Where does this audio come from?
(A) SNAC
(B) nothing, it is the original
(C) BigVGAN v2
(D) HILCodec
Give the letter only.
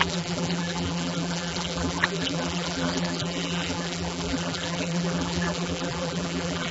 C